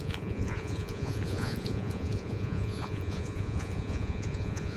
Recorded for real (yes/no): no